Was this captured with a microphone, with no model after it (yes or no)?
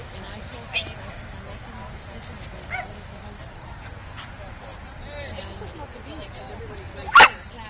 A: yes